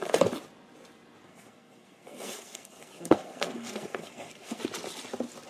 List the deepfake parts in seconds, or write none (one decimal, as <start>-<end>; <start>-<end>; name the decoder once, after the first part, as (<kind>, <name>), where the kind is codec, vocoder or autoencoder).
1.3-4.6 (codec, SNAC)